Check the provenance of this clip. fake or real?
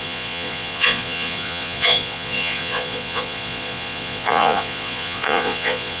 fake